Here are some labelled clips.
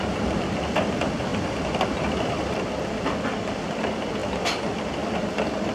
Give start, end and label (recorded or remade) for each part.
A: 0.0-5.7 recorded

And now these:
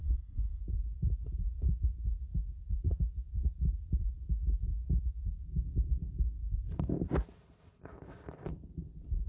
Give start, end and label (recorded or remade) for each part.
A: 0.0-0.6 remade; 0.6-9.3 recorded

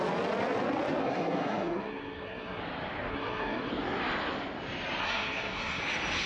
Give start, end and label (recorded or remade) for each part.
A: 0.0-1.0 recorded; 1.0-2.6 remade; 2.6-3.1 recorded; 3.1-3.7 remade; 3.7-5.0 recorded; 5.0-5.8 remade; 5.8-6.3 recorded

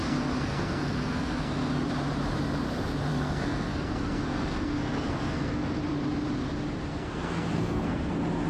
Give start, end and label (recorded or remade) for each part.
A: 0.0-1.8 remade; 1.8-3.1 recorded; 3.1-5.8 remade; 5.8-6.9 recorded; 6.9-8.1 remade; 8.1-8.5 recorded

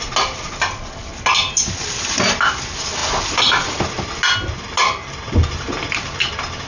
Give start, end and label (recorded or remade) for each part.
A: 0.0-6.7 recorded

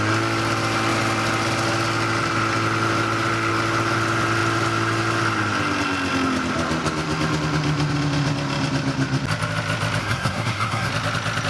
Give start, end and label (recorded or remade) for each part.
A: 0.0-10.0 recorded; 10.0-10.9 remade; 10.9-11.5 recorded

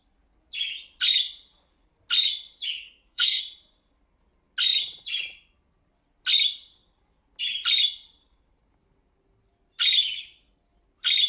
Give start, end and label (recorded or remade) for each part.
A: 0.0-2.8 recorded; 2.8-3.4 remade; 3.4-11.3 recorded